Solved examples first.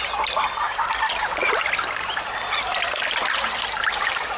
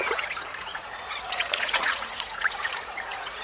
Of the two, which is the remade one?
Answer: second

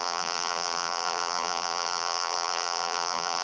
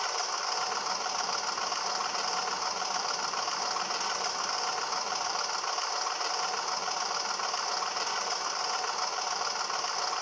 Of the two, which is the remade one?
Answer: first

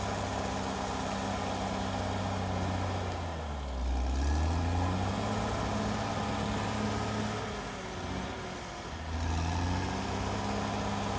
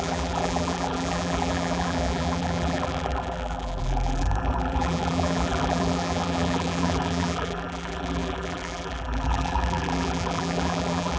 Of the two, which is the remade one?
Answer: second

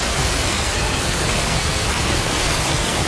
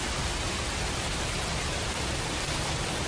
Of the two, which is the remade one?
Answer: first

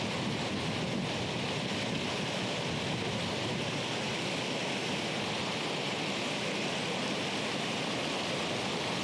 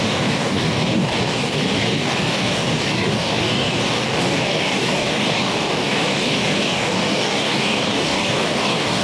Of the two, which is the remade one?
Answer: second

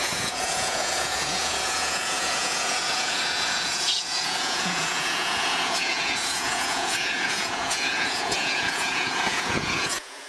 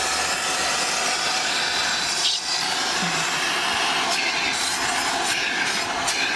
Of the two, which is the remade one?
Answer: first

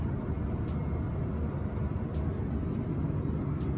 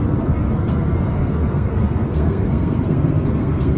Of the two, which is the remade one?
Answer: second